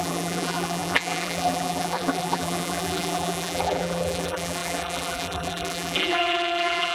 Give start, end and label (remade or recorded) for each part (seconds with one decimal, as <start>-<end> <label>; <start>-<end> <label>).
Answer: 0.0-6.9 remade